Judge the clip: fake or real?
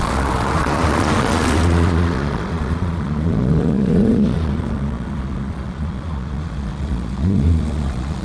fake